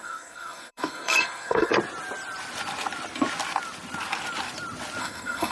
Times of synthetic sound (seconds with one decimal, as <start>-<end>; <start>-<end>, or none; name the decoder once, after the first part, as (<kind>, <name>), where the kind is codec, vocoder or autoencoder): 0.0-1.7 (codec, SNAC); 5.0-5.5